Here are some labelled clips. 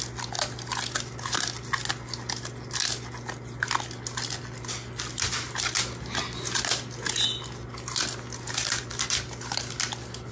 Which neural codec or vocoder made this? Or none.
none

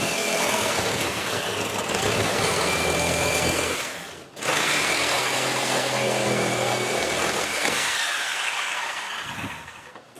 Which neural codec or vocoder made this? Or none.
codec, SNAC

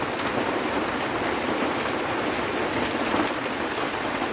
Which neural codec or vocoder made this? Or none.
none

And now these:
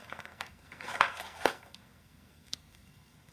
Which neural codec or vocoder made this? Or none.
codec, SNAC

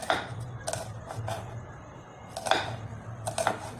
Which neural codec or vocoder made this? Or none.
none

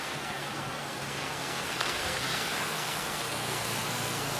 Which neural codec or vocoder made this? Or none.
codec, SNAC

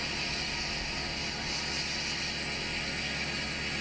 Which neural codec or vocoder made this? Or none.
none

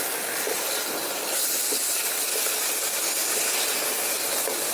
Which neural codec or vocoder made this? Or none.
none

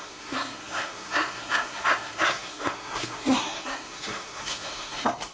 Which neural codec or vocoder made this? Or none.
codec, SNAC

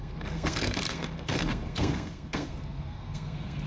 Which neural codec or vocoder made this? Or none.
codec, SNAC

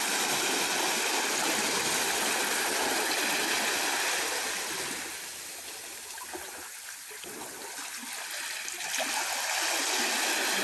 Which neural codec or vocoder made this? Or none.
none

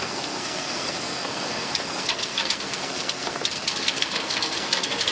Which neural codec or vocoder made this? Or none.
codec, SNAC